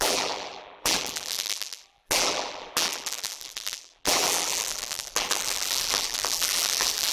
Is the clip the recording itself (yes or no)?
no